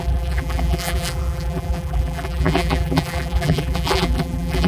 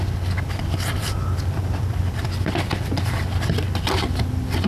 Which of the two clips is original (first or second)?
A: second